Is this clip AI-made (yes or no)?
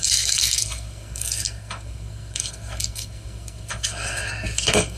yes